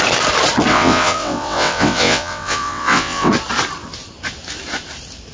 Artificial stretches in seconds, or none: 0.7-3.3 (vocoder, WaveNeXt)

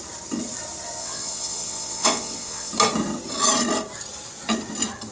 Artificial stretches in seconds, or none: 1.0-2.7 (vocoder, WaveNeXt)